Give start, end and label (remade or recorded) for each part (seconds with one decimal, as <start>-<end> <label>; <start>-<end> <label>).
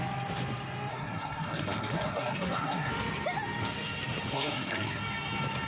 0.0-0.9 recorded; 0.9-2.9 remade; 2.9-4.3 recorded; 4.3-5.0 remade; 5.0-5.7 recorded